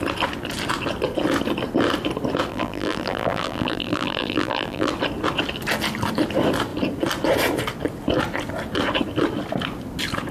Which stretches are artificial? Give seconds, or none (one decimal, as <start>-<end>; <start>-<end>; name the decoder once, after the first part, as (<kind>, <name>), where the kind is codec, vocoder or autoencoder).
2.5-4.9 (vocoder, BigVGAN v2)